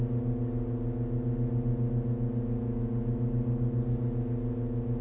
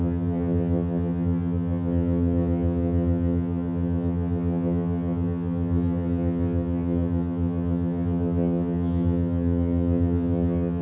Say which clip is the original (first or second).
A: first